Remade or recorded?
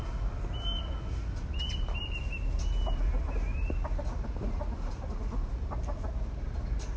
recorded